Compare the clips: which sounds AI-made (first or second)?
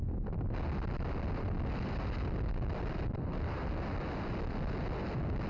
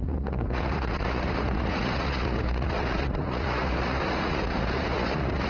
second